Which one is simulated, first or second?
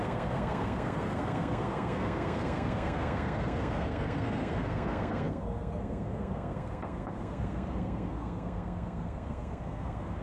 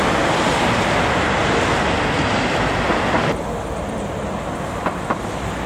first